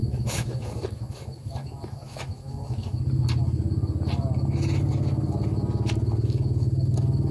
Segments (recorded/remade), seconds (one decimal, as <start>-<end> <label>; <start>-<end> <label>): 0.0-3.0 remade; 3.0-7.3 recorded